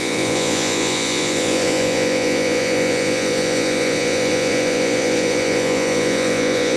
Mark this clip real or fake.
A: fake